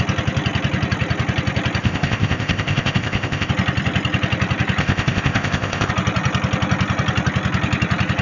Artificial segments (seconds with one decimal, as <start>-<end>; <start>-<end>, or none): 1.8-3.5; 4.8-5.9